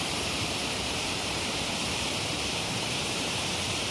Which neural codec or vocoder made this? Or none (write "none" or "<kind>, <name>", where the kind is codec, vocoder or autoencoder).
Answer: vocoder, BigVGAN v2